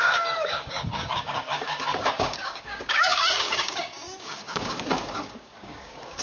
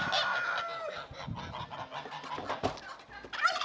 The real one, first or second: second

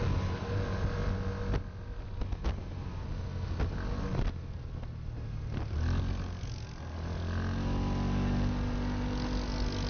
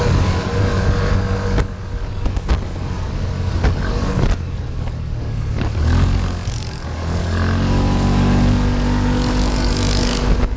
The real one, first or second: first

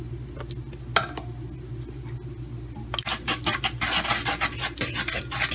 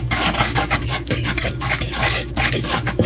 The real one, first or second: first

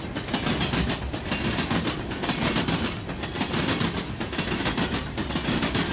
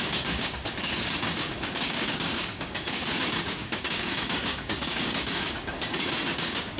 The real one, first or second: first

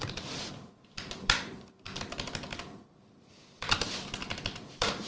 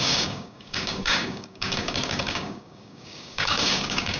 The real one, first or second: first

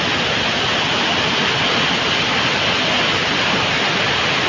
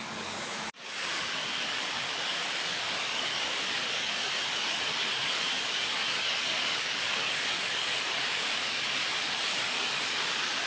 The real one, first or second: first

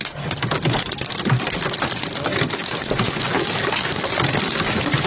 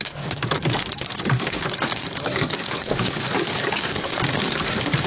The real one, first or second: first